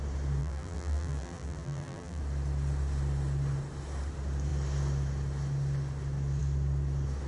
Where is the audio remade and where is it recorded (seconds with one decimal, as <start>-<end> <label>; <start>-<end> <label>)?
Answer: 0.0-0.4 recorded; 0.4-2.2 remade; 2.2-7.3 recorded